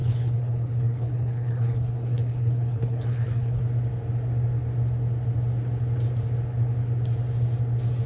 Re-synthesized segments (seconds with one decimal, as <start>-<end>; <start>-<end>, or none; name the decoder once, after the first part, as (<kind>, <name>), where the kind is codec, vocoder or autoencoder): 0.0-3.6 (codec, HILCodec)